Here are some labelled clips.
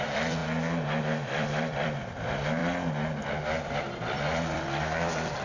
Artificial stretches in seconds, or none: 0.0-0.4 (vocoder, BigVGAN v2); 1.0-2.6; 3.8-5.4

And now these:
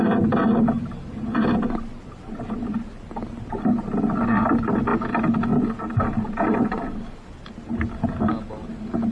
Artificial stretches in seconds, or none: none

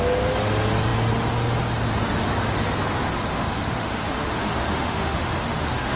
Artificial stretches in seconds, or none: 3.3-6.0 (autoencoder, DAC-VAE)

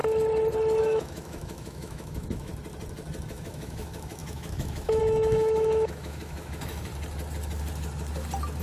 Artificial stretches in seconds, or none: 0.8-2.5 (autoencoder, DAC-VAE); 3.3-6.9

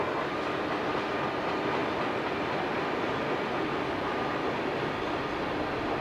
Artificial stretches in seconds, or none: none

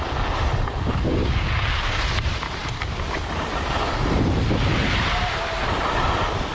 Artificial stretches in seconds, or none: 1.2-2.0 (codec, DAC)